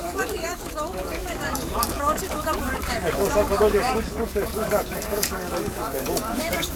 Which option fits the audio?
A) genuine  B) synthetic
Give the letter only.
B